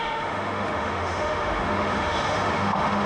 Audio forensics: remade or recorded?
remade